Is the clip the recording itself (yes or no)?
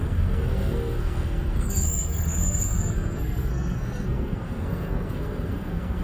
no